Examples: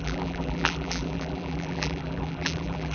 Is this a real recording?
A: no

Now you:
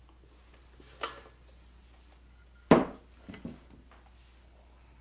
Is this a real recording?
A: yes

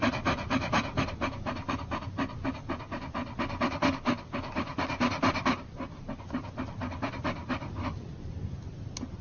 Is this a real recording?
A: yes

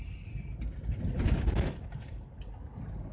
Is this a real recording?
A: yes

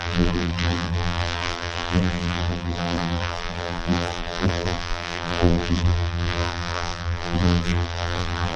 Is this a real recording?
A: no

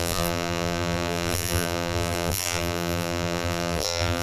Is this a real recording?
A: no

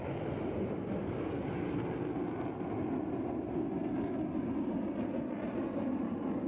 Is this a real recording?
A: yes